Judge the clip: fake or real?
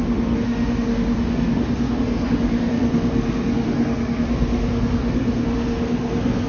fake